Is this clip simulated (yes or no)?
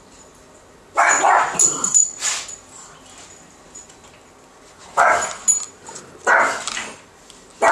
no